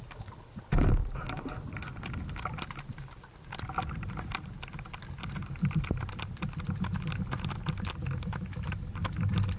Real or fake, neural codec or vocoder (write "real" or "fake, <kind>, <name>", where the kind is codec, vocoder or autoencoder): fake, vocoder, BigVGAN v2